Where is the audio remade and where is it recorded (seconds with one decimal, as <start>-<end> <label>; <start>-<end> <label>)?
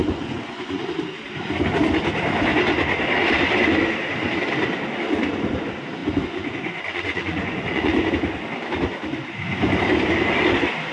0.0-0.8 remade; 0.8-6.0 recorded; 6.0-8.1 remade; 8.1-10.9 recorded